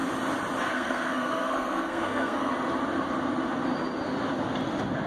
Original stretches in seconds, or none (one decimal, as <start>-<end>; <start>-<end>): 0.0-0.7; 2.5-5.1